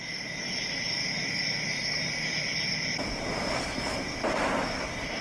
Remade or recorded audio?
recorded